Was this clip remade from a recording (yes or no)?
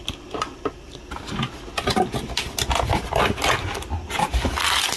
no